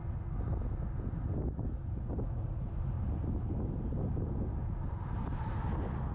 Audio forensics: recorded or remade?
recorded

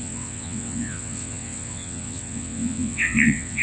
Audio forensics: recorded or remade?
remade